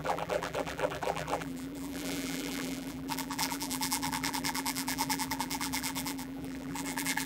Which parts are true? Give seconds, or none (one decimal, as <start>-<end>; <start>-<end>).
none